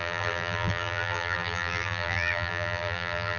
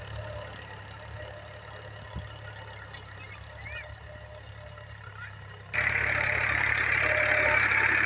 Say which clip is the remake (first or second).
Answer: first